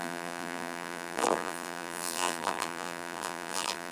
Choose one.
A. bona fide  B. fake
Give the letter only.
B